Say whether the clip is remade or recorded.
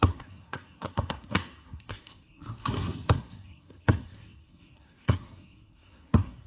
remade